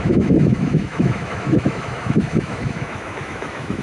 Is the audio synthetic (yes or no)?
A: yes